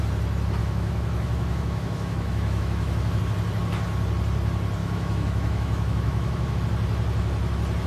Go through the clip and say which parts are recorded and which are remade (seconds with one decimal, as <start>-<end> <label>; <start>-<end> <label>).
0.0-0.6 recorded; 0.6-3.2 remade; 3.2-4.8 recorded; 4.8-6.6 remade; 6.6-7.9 recorded